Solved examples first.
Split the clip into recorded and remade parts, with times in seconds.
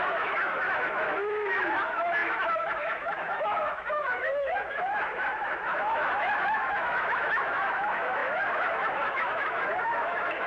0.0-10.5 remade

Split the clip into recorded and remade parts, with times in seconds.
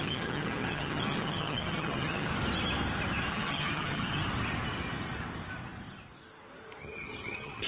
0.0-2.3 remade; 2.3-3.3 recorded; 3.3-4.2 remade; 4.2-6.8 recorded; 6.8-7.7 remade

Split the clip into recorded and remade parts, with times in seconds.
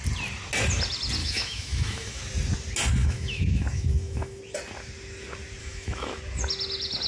0.0-1.2 recorded; 1.2-2.2 remade; 2.2-3.0 recorded; 3.0-4.4 remade; 4.4-5.6 recorded; 5.6-6.2 remade; 6.2-7.1 recorded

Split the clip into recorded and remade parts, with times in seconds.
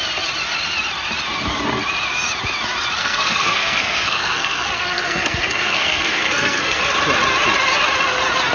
0.0-3.0 recorded; 3.0-6.8 remade; 6.8-8.5 recorded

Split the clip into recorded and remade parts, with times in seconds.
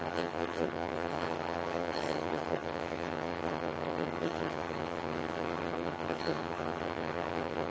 0.0-7.7 remade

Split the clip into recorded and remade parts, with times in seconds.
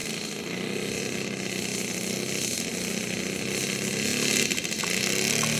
0.0-5.6 recorded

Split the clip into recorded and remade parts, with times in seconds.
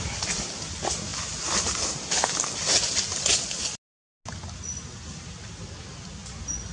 0.0-6.7 recorded